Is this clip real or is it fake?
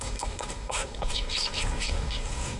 fake